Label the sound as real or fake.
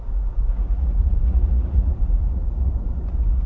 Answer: fake